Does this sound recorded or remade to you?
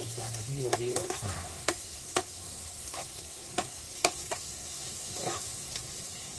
remade